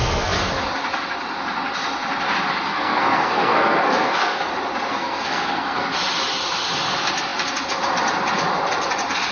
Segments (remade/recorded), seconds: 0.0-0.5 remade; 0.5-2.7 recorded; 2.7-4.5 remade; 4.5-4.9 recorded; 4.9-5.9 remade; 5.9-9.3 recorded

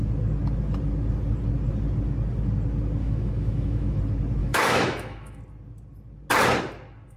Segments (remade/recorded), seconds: 0.0-3.0 recorded; 3.0-4.0 remade; 4.0-4.4 recorded; 4.4-5.4 remade; 5.4-7.2 recorded

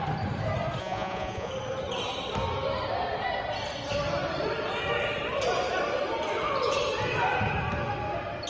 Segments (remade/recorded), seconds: 0.0-0.8 recorded; 0.8-1.5 remade; 1.5-8.5 recorded

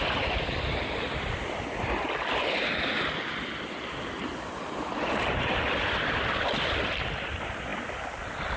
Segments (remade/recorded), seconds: 0.0-8.6 recorded